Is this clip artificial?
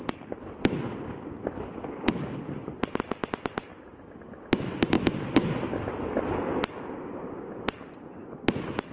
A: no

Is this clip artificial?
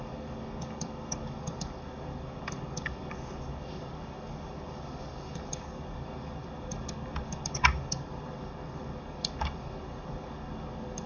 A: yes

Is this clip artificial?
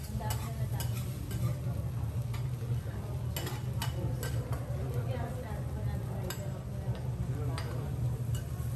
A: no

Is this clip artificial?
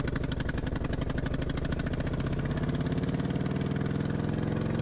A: no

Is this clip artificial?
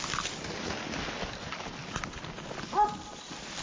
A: no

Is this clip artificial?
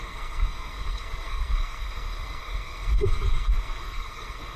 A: yes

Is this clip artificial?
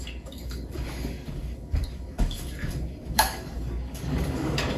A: yes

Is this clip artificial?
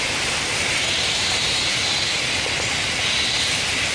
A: no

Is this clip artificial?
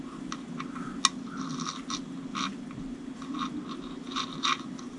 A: no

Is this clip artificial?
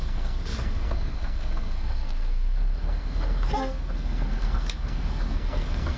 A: yes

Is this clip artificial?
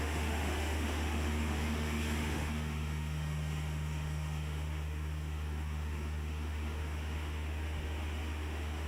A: yes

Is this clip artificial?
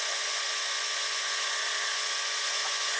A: yes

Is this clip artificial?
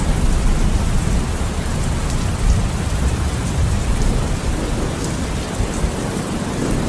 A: no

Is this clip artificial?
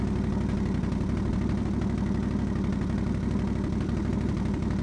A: no